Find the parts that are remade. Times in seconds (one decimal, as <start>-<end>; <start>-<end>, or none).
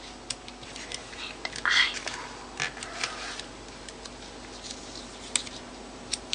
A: none